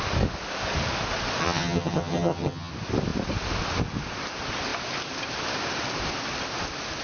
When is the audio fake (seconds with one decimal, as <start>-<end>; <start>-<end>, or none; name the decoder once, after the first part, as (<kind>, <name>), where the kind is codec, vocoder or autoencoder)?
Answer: 1.4-2.7 (vocoder, HiFi-GAN)